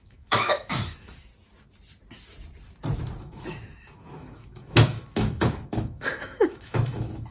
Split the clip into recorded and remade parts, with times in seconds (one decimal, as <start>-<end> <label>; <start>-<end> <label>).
0.0-1.3 remade; 1.3-3.2 recorded; 3.2-7.3 remade